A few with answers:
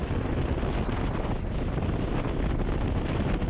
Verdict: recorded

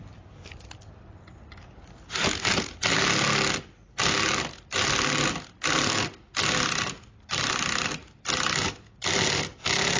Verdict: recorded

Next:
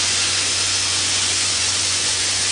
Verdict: remade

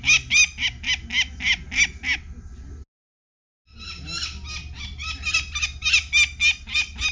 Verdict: recorded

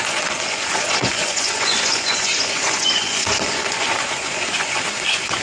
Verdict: remade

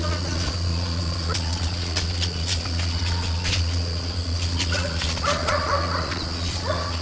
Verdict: remade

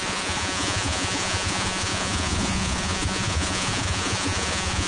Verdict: remade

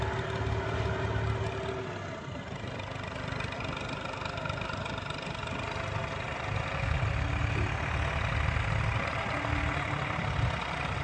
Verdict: recorded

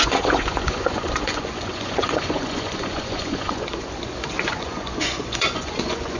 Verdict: remade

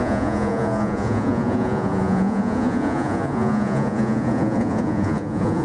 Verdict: remade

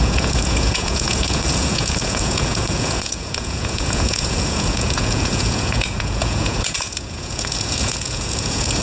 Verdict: remade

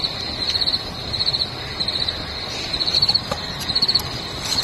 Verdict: recorded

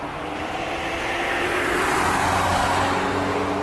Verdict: recorded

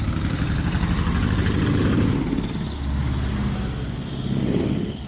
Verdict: recorded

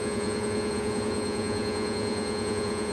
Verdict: remade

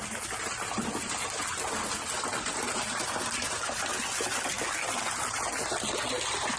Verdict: recorded